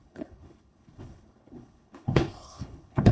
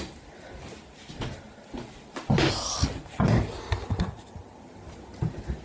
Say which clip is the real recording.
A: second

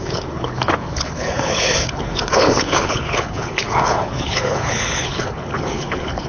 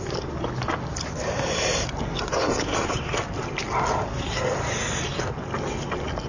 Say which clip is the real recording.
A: second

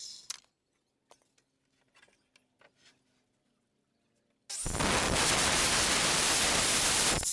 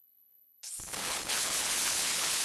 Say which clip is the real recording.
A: first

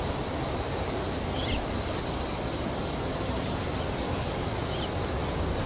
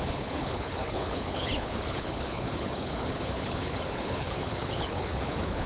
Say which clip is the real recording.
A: first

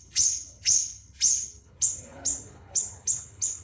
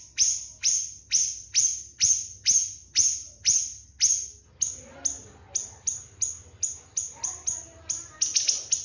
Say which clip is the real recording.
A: second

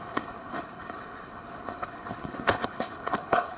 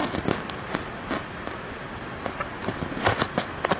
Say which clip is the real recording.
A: second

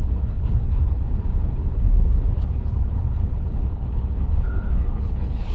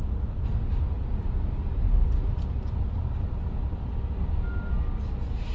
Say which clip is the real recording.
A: second